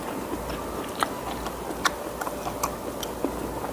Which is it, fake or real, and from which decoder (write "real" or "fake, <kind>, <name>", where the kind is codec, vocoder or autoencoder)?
real